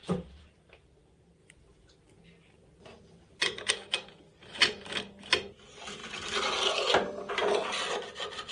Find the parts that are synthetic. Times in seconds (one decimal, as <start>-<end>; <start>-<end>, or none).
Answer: 0.0-0.7